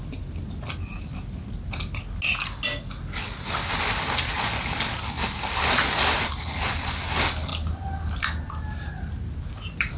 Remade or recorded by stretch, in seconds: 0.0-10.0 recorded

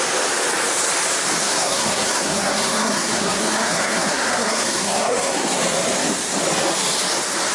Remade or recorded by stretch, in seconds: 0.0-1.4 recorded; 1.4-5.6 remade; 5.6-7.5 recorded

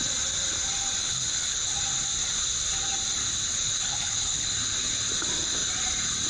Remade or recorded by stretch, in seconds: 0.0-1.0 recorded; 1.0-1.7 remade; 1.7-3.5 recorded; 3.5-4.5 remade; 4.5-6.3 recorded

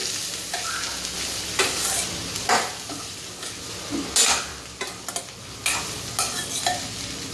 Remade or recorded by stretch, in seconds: 0.0-7.3 recorded

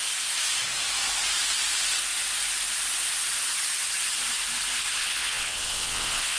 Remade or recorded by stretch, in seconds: 0.0-5.0 recorded; 5.0-6.4 remade

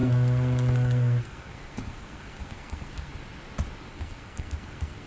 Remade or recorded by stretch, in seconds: 0.0-3.1 remade; 3.1-3.9 recorded; 3.9-5.1 remade